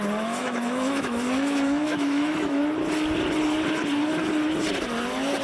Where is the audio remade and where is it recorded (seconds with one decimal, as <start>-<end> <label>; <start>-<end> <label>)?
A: 0.0-0.4 recorded; 0.4-2.6 remade; 2.6-5.4 recorded